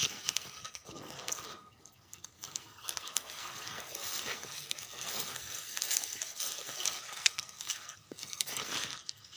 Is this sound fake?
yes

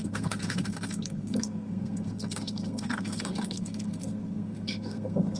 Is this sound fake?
yes